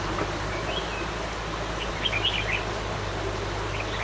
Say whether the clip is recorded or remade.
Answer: recorded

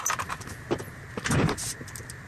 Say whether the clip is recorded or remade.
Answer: remade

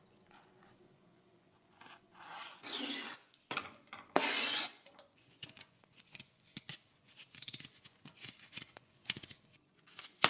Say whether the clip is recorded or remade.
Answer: remade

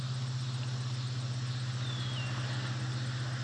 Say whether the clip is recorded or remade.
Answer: recorded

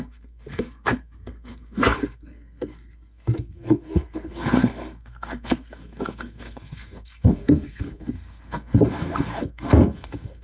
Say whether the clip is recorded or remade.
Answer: remade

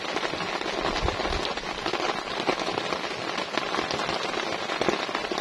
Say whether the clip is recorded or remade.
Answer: recorded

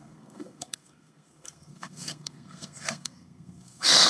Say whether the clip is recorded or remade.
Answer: remade